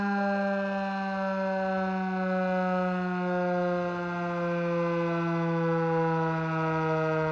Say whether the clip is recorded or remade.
recorded